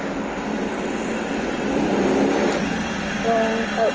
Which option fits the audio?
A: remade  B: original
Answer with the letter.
A